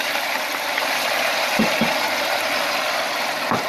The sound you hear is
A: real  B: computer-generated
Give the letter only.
A